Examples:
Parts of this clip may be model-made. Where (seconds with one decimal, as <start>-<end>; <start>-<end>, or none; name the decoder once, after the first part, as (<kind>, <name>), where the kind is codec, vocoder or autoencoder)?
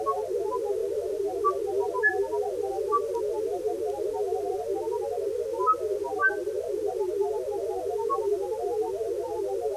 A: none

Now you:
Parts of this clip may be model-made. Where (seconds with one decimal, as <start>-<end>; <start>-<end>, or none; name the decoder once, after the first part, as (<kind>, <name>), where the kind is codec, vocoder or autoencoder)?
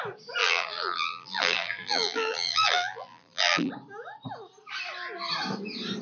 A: 0.4-3.7 (vocoder, BigVGAN v2)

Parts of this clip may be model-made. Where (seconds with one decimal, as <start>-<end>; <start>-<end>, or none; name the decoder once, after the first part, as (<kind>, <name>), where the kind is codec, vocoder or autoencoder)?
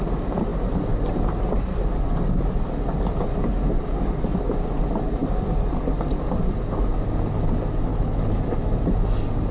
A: 7.9-8.4 (codec, HILCodec)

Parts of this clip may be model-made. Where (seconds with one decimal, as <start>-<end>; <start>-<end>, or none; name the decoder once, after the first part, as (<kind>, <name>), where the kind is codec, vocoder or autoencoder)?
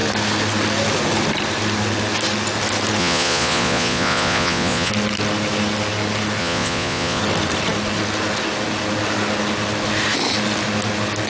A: 3.0-4.9 (vocoder, Vocos); 6.4-7.2